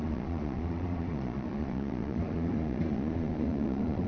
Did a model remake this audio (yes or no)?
yes